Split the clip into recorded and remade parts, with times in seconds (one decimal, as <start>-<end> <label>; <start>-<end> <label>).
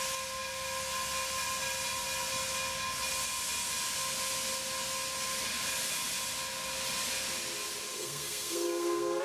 0.0-7.9 recorded; 7.9-9.2 remade